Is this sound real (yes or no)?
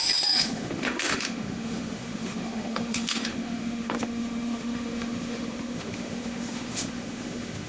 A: no